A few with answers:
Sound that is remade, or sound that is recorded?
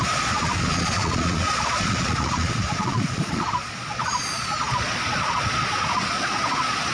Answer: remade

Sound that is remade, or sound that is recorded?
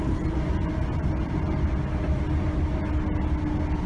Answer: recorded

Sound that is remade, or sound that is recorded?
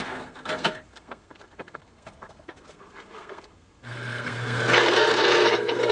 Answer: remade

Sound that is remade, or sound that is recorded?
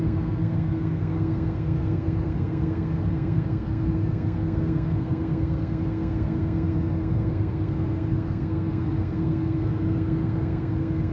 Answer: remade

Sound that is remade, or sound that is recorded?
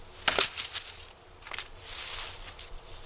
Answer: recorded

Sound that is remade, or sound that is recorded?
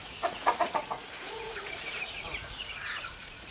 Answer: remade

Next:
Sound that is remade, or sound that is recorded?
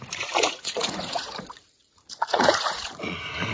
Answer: remade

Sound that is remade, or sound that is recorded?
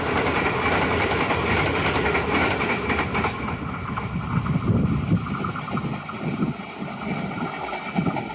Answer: recorded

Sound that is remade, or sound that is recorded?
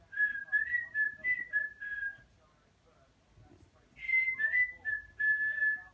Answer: recorded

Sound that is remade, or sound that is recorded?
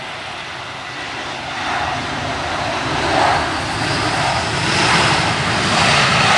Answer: recorded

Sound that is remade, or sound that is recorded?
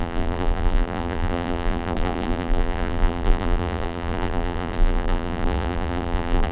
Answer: remade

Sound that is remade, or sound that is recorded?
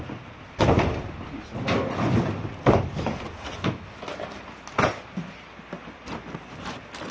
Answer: recorded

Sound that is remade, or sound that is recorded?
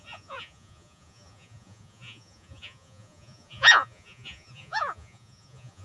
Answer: remade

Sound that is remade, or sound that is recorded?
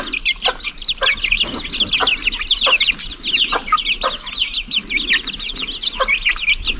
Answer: recorded